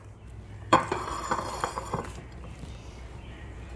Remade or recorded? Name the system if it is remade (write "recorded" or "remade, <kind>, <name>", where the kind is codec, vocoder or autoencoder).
remade, vocoder, BigVGAN v2